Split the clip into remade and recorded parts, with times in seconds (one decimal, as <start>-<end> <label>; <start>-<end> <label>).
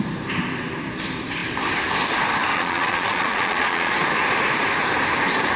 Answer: 0.0-2.5 recorded; 2.5-3.9 remade; 3.9-5.6 recorded